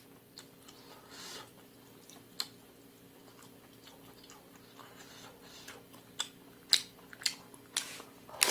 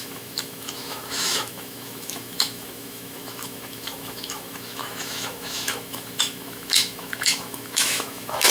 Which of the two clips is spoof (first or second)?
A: second